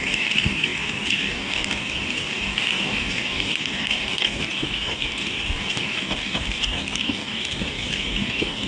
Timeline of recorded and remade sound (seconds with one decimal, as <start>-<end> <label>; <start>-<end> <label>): 0.0-8.7 remade